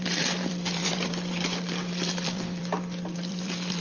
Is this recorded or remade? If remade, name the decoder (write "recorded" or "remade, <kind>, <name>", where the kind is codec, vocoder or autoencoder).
remade, vocoder, BigVGAN v2